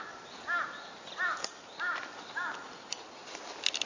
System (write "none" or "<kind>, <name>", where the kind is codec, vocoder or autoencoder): none